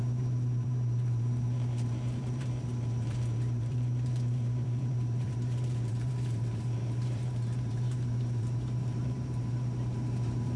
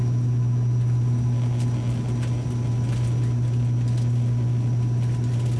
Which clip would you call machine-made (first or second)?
first